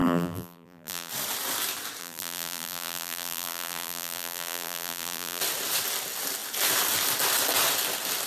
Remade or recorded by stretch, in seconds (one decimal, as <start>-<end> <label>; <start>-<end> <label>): 0.0-1.1 remade; 1.1-2.0 recorded; 2.0-5.4 remade; 5.4-8.3 recorded